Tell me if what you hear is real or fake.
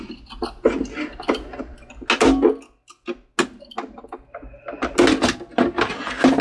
real